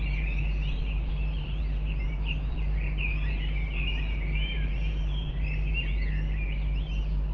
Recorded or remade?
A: remade